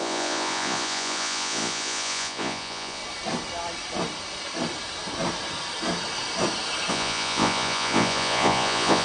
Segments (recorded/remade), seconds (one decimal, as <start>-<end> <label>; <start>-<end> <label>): 0.0-3.0 remade; 3.0-6.9 recorded; 6.9-9.0 remade